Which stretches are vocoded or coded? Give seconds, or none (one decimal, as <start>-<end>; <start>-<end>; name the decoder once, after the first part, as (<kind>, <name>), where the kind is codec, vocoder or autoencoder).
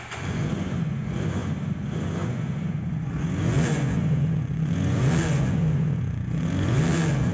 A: 0.0-7.3 (vocoder, Vocos)